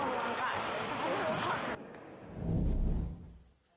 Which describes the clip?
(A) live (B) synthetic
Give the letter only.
A